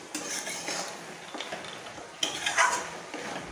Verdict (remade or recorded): recorded